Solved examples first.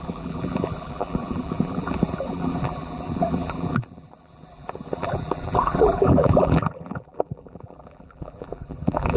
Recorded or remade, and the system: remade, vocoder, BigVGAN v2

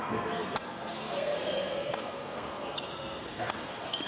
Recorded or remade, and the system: remade, codec, SNAC